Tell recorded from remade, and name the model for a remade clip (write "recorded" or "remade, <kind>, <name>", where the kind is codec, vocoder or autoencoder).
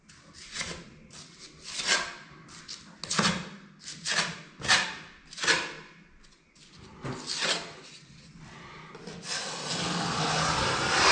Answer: recorded